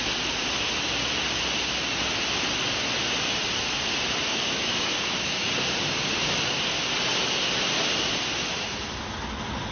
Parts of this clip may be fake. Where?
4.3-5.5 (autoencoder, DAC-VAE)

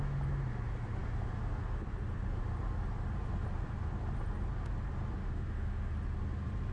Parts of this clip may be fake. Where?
5.2-5.9 (autoencoder, DAC-VAE)

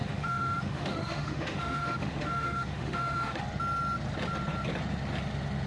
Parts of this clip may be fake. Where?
0.0-3.4 (autoencoder, DAC-VAE)

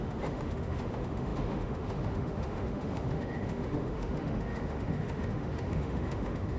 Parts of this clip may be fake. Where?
0.0-6.6 (autoencoder, DAC-VAE)

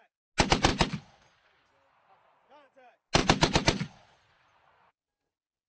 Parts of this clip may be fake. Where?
none